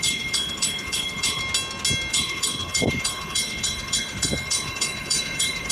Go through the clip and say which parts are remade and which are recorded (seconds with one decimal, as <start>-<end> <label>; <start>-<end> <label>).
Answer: 0.0-1.4 remade; 1.4-2.1 recorded; 2.1-5.7 remade